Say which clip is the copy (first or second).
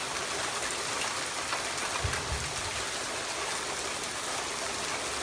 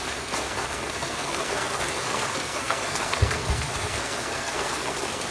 second